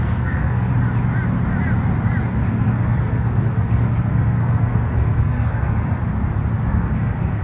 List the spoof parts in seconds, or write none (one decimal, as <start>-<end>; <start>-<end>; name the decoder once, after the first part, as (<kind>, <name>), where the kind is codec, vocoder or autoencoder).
0.0-0.7 (codec, SNAC); 2.5-6.0; 6.7-7.4